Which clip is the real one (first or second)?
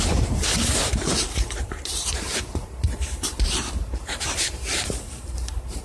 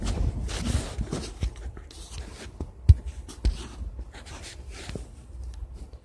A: second